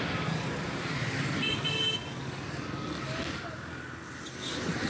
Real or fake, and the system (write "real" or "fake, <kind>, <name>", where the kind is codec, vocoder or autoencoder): real